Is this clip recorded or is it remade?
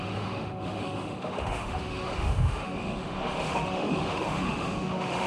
remade